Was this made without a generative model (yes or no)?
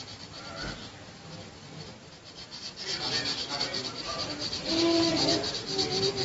yes